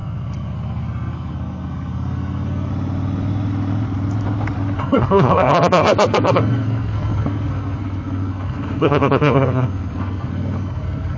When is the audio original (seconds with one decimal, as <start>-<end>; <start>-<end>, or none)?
2.7-4.8